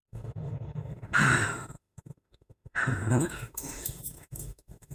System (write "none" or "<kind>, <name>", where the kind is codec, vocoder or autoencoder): autoencoder, DAC-VAE